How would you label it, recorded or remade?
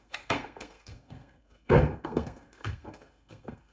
remade